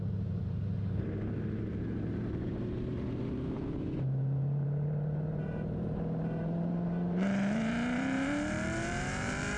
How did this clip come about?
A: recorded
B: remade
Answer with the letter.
B